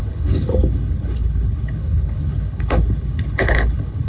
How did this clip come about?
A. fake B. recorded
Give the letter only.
A